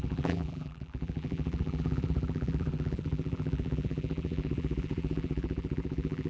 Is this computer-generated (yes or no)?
yes